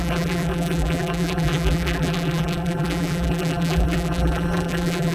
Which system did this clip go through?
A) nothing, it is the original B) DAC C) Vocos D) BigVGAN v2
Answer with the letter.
D